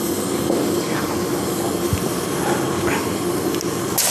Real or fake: real